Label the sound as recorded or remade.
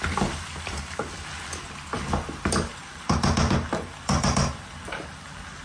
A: remade